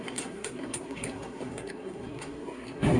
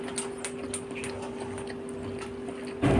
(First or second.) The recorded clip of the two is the second